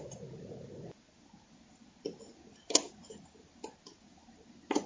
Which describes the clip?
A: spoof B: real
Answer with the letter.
B